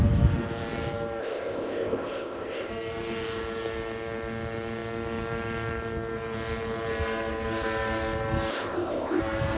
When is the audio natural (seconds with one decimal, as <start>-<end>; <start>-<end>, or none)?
0.0-1.2; 2.7-8.5; 9.2-9.6